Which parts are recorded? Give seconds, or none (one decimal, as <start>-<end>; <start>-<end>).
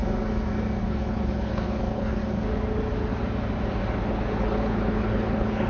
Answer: 0.0-0.8; 2.2-4.1